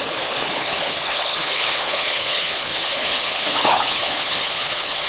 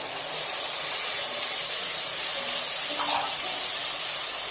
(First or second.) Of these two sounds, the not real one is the first